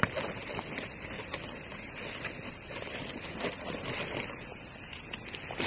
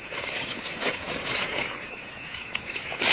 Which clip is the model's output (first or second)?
second